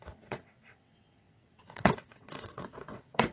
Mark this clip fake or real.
fake